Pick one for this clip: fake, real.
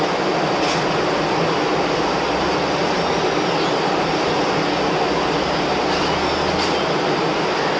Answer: real